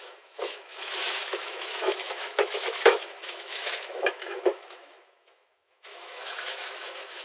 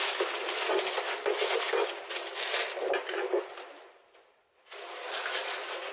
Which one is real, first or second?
second